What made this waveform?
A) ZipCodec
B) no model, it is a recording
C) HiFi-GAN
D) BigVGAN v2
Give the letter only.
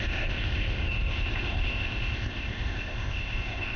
A